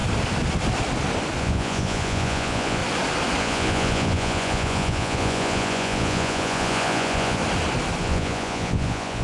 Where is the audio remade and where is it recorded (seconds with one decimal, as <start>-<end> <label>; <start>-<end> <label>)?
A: 0.0-1.4 recorded; 1.4-2.8 remade; 2.8-3.4 recorded; 3.4-7.4 remade; 7.4-8.0 recorded; 8.0-9.2 remade